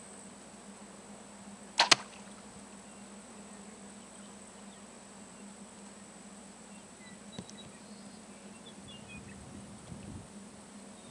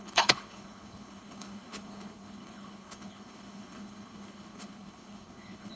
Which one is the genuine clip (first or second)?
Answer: first